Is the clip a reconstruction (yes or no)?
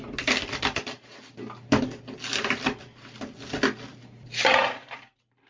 no